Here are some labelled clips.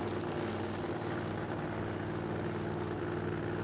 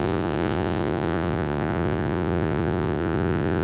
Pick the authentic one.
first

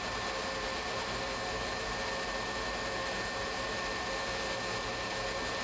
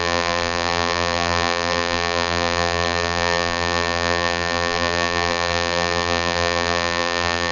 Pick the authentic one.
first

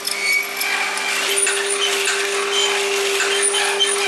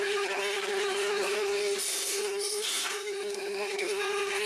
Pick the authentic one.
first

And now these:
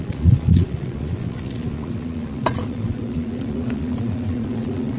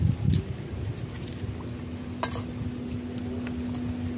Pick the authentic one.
second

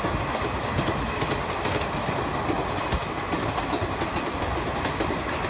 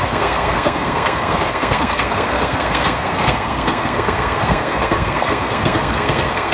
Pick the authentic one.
first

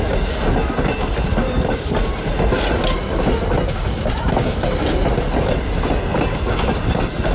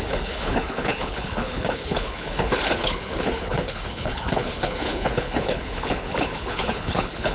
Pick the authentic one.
first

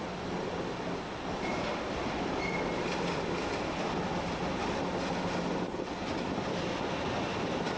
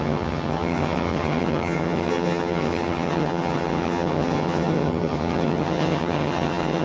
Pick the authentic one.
first